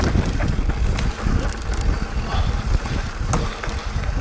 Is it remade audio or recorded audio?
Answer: recorded